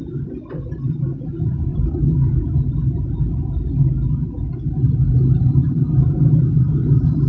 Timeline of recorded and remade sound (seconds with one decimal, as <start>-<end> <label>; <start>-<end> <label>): 0.0-7.3 recorded